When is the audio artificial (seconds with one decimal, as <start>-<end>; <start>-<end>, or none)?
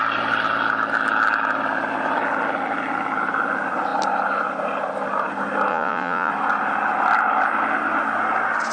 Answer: 5.7-6.3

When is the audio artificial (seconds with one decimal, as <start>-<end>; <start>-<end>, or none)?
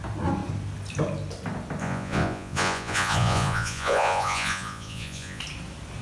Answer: 1.8-5.4